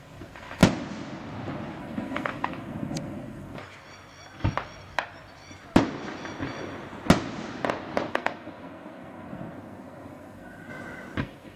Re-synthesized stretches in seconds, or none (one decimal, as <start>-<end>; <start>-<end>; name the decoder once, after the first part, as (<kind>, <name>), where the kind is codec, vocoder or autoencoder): 0.0-0.6 (codec, SNAC); 1.8-3.6; 8.1-10.7; 11.2-11.6